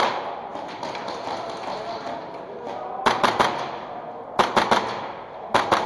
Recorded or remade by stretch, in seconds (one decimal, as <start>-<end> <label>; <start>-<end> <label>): 0.0-5.9 recorded